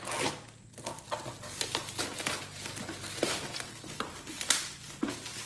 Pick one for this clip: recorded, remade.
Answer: recorded